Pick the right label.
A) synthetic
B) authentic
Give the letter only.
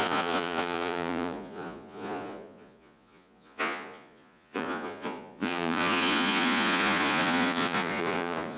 A